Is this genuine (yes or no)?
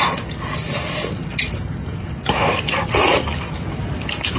yes